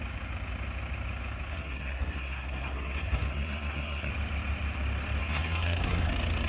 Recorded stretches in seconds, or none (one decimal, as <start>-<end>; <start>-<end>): 0.0-1.5; 4.1-5.2; 6.1-6.5